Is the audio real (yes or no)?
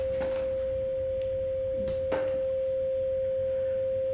yes